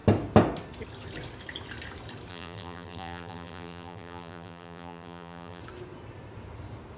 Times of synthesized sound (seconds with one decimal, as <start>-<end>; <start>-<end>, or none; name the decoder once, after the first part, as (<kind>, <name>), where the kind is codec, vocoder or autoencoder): 2.3-5.6 (vocoder, BigVGAN v2)

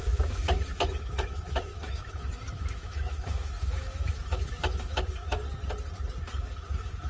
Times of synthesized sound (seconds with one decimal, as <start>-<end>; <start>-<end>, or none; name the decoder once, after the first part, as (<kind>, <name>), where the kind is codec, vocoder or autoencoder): 0.0-5.4 (autoencoder, DAC-VAE); 6.2-7.1

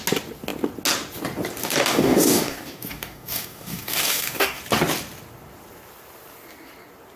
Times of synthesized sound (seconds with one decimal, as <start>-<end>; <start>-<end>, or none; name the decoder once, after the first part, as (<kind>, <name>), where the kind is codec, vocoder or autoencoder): 1.6-4.6 (codec, DAC)

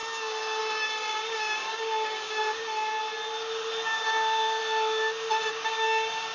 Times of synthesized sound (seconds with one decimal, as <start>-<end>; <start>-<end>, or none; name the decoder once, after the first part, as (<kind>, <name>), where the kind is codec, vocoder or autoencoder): 0.0-2.6 (codec, DAC); 4.0-4.6; 5.5-6.3

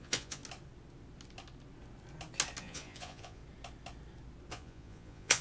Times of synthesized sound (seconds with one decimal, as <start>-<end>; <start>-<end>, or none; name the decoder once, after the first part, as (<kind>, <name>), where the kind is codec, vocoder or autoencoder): 0.0-0.4 (vocoder, Vocos); 2.6-3.4; 4.5-5.4